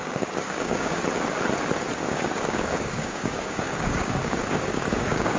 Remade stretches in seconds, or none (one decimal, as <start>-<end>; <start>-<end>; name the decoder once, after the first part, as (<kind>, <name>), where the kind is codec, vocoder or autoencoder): 0.0-1.0 (codec, DAC); 2.0-5.4